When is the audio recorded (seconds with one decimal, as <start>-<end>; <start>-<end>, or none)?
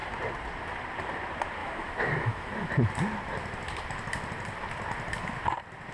0.0-1.6; 2.7-5.9